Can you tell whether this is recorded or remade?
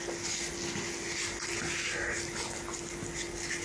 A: recorded